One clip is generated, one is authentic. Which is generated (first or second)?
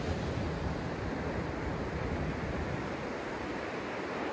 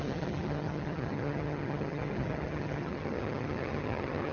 second